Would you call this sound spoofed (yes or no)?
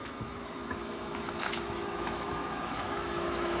yes